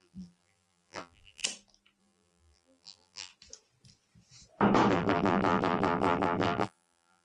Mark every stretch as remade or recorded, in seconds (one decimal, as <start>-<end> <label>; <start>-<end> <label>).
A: 0.0-1.4 remade; 1.4-2.0 recorded; 2.0-3.3 remade; 3.3-4.9 recorded; 4.9-7.2 remade